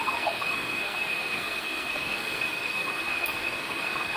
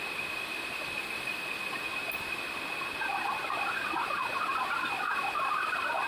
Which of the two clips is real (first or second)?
second